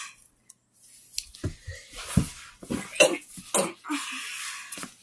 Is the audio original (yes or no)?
yes